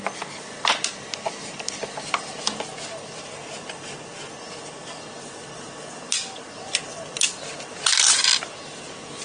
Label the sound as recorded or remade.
recorded